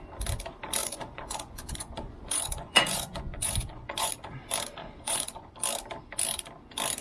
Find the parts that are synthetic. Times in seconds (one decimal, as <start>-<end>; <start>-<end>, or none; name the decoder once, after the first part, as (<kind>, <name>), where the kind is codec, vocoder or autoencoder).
0.8-4.1 (vocoder, Vocos); 4.8-5.5